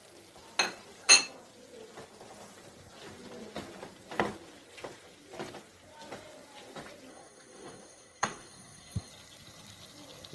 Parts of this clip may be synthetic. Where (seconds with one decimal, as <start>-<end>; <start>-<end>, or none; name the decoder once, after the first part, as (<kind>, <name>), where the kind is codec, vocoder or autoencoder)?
7.1-9.1 (codec, SNAC)